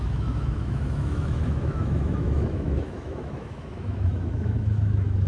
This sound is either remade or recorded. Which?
remade